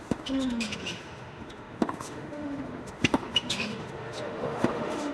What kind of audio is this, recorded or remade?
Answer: remade